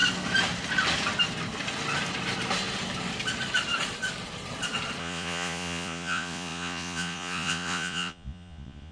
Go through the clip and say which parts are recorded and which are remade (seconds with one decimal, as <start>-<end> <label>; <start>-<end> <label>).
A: 0.0-5.0 recorded; 5.0-8.9 remade